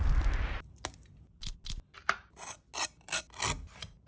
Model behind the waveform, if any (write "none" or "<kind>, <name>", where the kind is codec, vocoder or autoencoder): none